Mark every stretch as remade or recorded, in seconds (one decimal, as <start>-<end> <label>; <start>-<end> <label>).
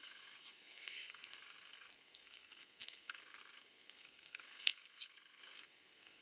0.0-6.2 remade